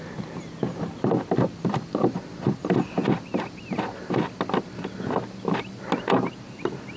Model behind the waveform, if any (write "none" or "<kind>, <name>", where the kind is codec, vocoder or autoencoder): none